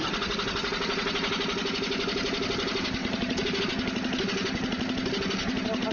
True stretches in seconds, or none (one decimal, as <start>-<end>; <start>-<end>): 0.0-3.0; 3.6-5.9